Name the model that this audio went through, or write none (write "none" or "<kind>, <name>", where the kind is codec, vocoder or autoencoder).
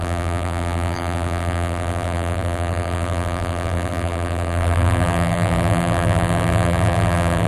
vocoder, BigVGAN v2